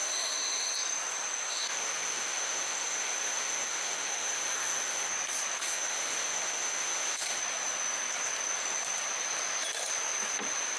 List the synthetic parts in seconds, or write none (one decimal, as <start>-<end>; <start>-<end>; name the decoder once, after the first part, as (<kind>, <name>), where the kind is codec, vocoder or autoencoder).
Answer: 0.0-0.7 (autoencoder, DAC-VAE); 1.5-5.1; 5.6-7.4